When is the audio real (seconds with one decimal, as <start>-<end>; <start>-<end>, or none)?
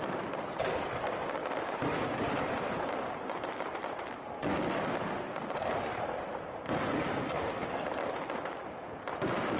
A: 0.0-1.4; 3.0-5.9; 7.1-9.6